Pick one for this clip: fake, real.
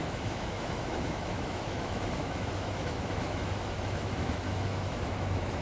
fake